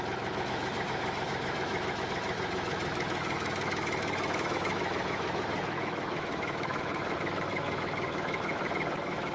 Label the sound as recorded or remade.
remade